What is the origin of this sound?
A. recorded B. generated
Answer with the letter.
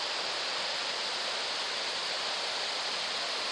A